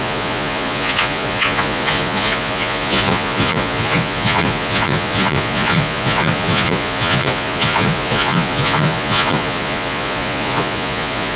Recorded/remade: remade